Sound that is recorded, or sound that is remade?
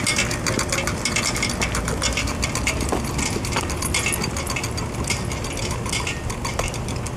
recorded